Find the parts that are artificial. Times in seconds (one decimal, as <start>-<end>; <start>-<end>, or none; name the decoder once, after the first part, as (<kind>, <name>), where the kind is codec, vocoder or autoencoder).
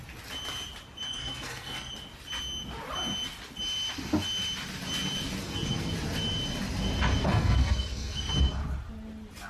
1.1-1.9 (codec, SNAC); 5.4-5.9; 7.2-8.3